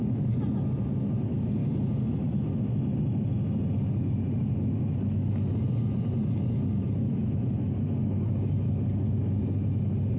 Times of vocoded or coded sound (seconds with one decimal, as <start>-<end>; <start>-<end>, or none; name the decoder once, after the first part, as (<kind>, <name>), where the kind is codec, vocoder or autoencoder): none